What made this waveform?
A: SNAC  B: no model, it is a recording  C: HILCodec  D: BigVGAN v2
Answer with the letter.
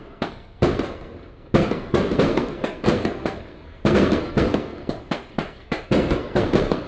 A